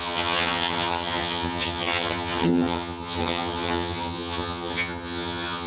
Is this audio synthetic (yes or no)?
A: yes